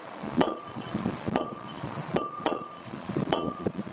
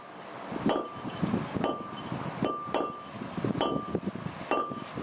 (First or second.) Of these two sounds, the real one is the second